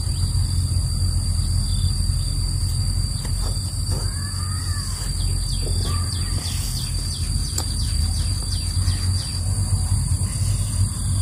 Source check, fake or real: real